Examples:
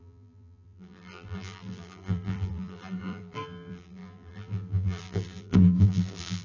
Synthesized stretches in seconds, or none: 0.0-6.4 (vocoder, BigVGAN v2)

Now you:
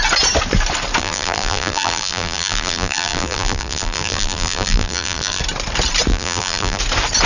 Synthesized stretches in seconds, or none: 1.0-5.4 (vocoder, BigVGAN v2); 6.1-6.8

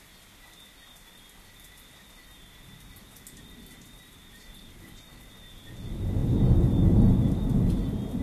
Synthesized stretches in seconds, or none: none